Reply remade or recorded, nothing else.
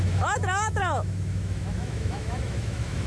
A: remade